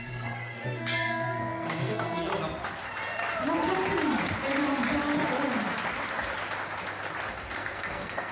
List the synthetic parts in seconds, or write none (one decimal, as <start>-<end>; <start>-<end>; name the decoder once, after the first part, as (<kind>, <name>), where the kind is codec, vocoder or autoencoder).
0.0-2.3 (codec, SNAC); 7.3-8.3